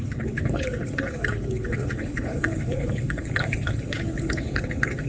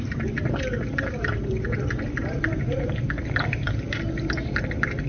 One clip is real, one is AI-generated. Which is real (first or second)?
second